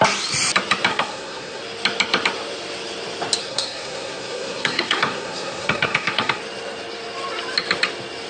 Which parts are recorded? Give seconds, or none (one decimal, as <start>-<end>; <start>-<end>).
0.0-0.9; 1.6-3.4; 6.4-8.3